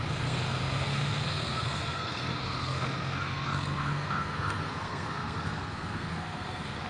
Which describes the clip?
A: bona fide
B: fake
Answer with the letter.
B